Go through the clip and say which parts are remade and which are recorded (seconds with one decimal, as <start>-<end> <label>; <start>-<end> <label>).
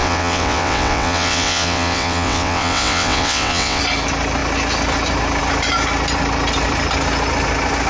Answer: 0.0-3.8 remade; 3.8-7.9 recorded